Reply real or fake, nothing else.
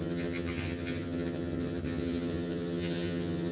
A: fake